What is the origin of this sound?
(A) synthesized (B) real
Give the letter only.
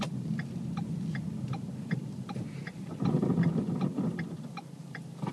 A